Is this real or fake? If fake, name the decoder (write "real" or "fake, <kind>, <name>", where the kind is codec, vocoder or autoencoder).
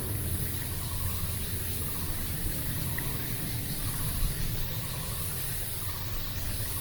real